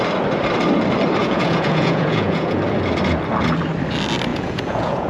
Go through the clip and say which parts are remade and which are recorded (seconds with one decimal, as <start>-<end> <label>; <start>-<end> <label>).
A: 0.0-1.2 recorded; 1.2-2.6 remade; 2.6-4.3 recorded; 4.3-5.1 remade